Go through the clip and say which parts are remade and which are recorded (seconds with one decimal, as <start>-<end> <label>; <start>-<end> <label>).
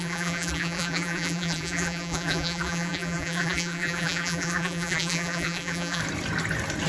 0.0-6.0 remade; 6.0-6.9 recorded